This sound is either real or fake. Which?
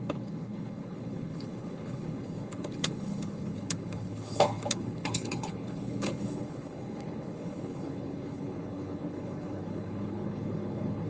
fake